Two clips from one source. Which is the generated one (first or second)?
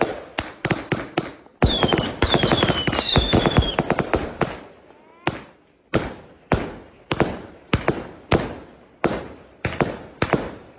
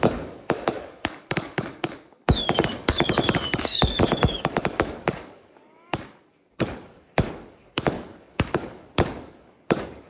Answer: second